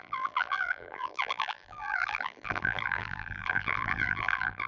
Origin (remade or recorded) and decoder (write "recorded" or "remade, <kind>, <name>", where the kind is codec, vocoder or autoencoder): remade, vocoder, BigVGAN v2